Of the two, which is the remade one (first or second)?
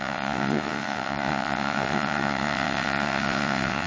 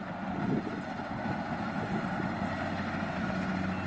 first